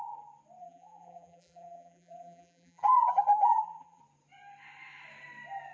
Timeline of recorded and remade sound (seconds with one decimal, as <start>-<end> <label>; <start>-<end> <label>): 0.0-0.6 recorded; 0.6-4.0 remade; 4.0-5.7 recorded